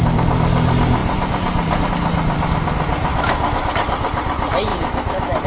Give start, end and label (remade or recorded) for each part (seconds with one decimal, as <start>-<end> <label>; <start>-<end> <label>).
0.0-3.1 recorded; 3.1-3.7 remade; 3.7-4.7 recorded; 4.7-5.5 remade